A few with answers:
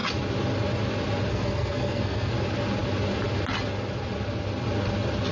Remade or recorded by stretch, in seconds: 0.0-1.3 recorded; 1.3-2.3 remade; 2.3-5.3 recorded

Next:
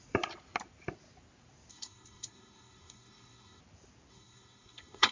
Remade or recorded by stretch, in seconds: 0.0-1.7 recorded; 1.7-3.6 remade; 3.6-4.1 recorded; 4.1-5.1 remade

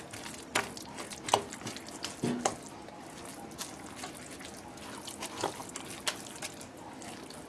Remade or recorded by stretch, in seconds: 0.0-7.5 recorded